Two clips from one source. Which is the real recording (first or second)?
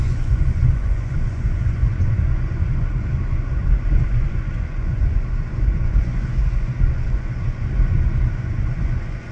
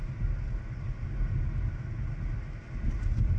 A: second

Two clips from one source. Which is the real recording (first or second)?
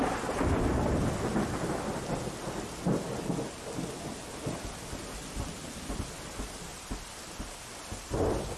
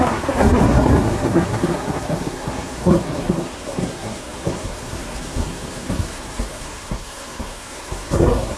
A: first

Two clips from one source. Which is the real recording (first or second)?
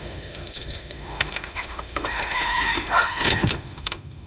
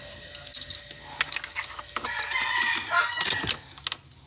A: second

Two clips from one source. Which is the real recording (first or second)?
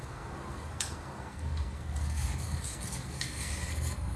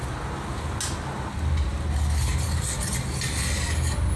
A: second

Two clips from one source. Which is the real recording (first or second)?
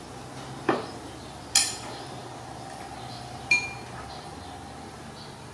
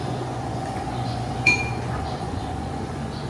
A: first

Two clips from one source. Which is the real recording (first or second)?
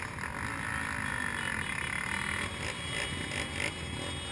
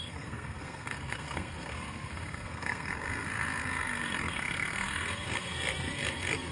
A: first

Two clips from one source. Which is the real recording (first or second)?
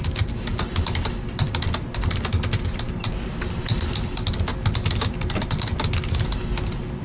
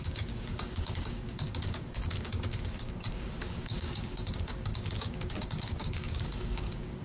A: first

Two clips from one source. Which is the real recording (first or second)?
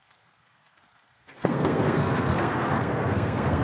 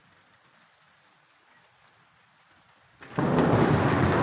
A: second